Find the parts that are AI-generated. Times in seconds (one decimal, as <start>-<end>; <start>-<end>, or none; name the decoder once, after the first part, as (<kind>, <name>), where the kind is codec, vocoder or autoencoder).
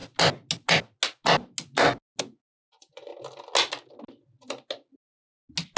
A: 2.2-3.1 (vocoder, Vocos)